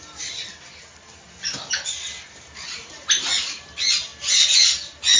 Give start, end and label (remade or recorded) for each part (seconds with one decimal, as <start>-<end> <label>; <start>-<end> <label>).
0.0-5.2 recorded